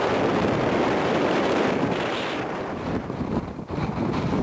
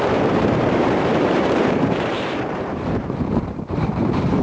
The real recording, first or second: first